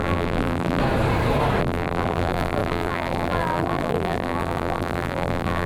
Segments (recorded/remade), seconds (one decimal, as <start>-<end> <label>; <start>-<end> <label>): 0.0-0.8 remade; 0.8-1.6 recorded; 1.6-5.7 remade